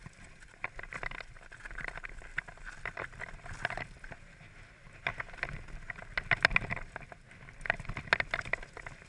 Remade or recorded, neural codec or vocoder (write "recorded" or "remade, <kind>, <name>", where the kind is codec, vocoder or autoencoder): recorded